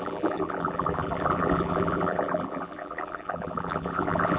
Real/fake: fake